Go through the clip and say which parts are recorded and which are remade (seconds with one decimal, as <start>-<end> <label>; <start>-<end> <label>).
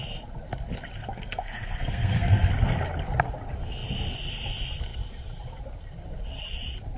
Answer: 0.0-1.0 recorded; 1.0-2.5 remade; 2.5-7.0 recorded